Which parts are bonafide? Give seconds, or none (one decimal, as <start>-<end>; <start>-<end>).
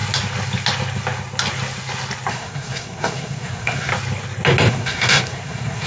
0.0-2.3; 3.9-4.7